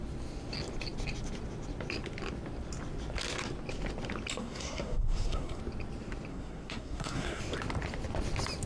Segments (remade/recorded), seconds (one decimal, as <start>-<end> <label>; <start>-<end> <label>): 0.0-4.4 recorded; 4.4-5.6 remade; 5.6-6.3 recorded; 6.3-7.4 remade; 7.4-8.7 recorded